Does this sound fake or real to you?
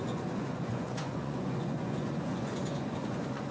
fake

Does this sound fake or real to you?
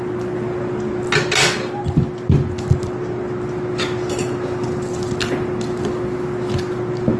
real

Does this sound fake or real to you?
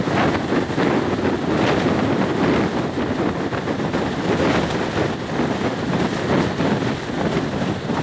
real